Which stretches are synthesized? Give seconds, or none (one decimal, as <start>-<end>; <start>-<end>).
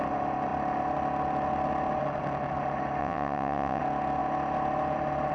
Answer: 3.0-3.8